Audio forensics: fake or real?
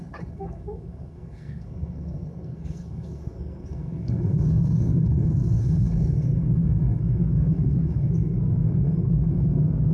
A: fake